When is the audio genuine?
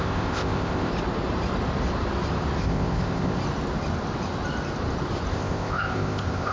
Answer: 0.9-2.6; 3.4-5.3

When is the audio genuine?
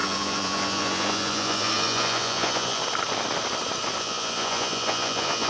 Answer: 2.8-4.0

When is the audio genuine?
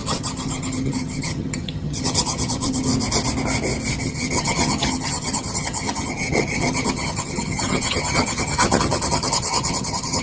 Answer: 2.9-4.0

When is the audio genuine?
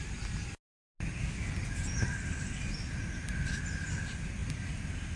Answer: 0.0-5.2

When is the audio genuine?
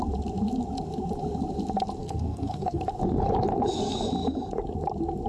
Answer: 0.0-2.0; 2.8-5.3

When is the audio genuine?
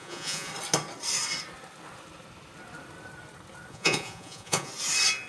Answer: 0.5-3.7; 4.7-5.3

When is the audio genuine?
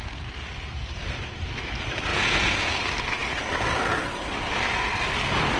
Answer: 0.0-2.1; 2.7-5.6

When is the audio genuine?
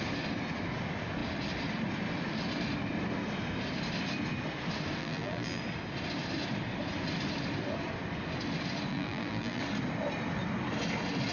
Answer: 0.0-5.0; 5.6-8.9; 9.6-11.3